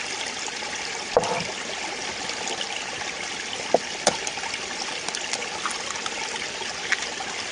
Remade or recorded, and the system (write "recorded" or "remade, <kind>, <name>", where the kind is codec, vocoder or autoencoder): recorded